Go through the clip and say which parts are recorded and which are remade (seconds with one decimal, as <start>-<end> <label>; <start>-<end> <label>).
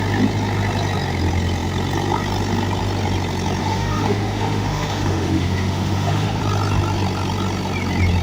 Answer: 0.0-3.6 recorded; 3.6-6.4 remade; 6.4-8.2 recorded